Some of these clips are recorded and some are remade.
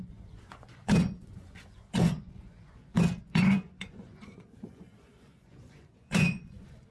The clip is remade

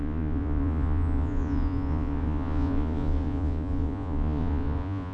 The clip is remade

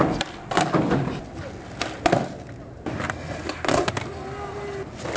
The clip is recorded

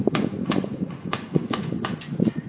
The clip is remade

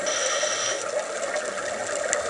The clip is recorded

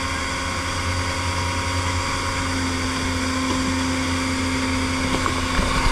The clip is recorded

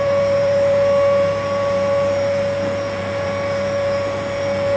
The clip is remade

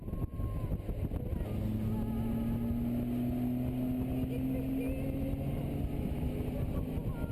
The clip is recorded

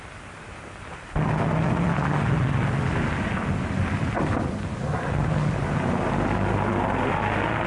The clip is recorded